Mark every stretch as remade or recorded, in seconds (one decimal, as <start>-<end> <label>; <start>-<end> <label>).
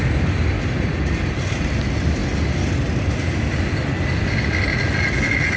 0.0-5.6 recorded